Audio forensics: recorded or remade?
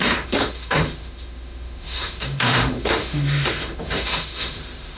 remade